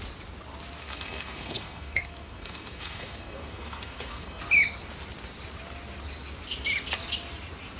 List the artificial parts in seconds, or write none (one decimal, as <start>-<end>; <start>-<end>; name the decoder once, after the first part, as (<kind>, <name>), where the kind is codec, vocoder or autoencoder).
0.8-4.4 (codec, SNAC)